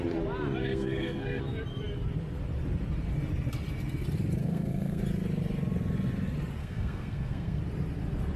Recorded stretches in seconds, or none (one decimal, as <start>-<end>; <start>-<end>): 0.0-0.6; 1.4-4.4; 5.0-6.6; 7.6-8.4